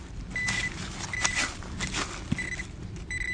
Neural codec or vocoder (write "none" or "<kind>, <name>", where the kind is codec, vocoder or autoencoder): none